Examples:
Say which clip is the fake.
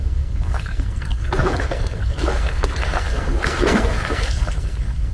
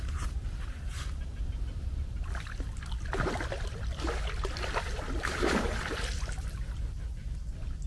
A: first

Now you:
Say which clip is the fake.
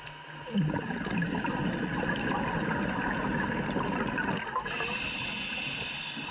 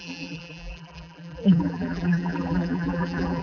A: second